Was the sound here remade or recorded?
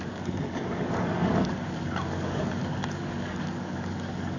remade